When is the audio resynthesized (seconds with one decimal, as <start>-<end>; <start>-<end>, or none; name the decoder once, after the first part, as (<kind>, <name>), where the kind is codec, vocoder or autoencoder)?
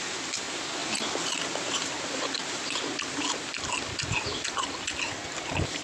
none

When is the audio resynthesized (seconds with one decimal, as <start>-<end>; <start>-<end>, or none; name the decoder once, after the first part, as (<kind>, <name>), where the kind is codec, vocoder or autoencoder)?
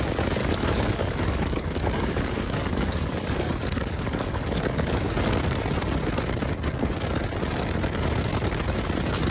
0.4-5.1 (codec, DAC)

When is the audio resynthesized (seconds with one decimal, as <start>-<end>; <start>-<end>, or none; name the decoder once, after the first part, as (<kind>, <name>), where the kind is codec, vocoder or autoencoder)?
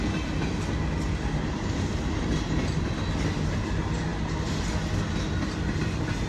none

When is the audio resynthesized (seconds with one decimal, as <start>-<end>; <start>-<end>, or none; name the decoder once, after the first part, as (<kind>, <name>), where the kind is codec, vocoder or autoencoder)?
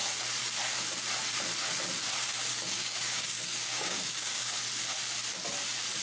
2.5-4.6 (codec, DAC)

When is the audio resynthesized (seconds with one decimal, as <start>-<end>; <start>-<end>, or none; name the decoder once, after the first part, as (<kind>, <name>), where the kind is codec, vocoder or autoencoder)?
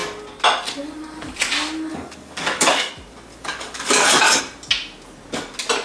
1.9-2.9 (codec, DAC); 3.3-4.4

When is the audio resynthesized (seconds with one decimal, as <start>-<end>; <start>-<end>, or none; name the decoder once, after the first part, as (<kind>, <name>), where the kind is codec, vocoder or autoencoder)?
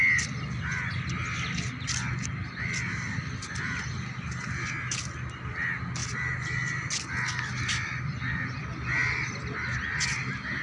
none